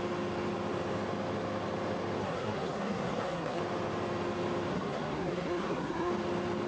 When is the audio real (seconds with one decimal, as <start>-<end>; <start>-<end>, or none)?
0.0-2.2; 3.6-4.7; 6.1-6.7